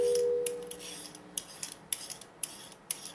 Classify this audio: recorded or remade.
recorded